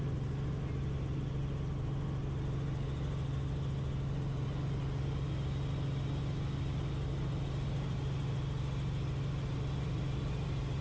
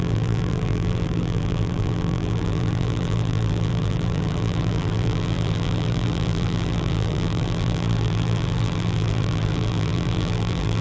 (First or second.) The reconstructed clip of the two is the second